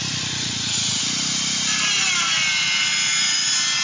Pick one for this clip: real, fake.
real